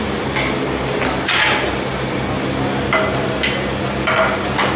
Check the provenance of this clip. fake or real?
real